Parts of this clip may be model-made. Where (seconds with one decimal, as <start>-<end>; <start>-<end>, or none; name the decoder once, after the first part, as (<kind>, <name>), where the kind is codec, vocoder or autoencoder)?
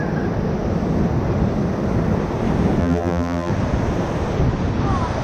2.8-3.5 (vocoder, BigVGAN v2)